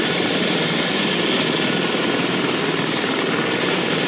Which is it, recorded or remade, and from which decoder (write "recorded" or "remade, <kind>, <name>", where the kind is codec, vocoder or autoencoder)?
recorded